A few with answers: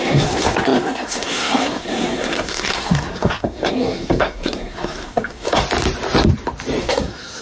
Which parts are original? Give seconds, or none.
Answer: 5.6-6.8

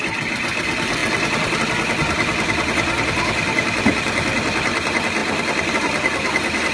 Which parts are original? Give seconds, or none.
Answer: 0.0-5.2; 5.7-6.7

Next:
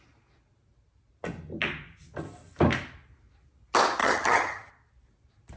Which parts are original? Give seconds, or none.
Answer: 0.0-4.0; 4.7-5.6

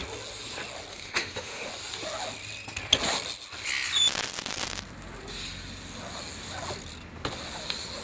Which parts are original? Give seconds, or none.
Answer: 0.0-0.9; 1.7-8.0

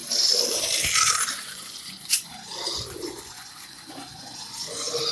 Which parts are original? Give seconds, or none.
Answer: 0.0-1.3